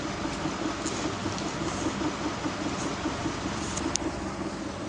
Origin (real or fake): real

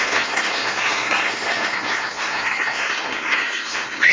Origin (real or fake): fake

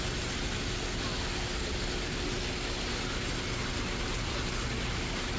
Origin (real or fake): real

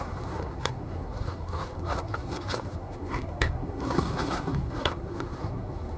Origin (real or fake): fake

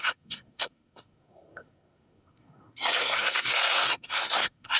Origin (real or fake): fake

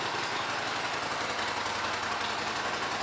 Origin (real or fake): real